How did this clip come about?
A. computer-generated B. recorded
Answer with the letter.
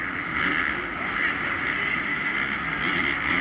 B